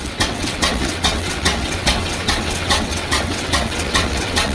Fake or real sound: fake